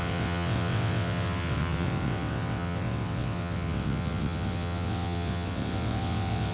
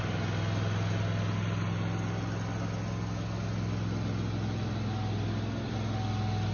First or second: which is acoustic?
second